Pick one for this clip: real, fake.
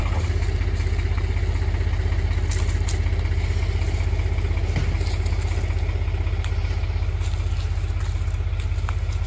real